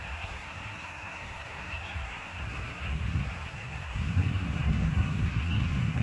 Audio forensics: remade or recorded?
remade